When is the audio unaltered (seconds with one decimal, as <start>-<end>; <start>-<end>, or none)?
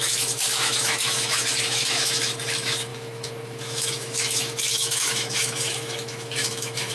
none